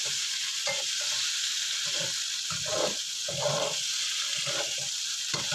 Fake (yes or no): no